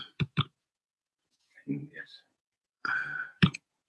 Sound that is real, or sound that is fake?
fake